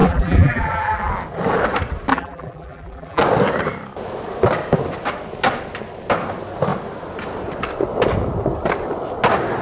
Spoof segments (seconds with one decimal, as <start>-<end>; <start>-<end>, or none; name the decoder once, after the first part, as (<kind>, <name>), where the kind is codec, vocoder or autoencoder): 0.0-1.1 (vocoder, BigVGAN v2); 2.1-3.2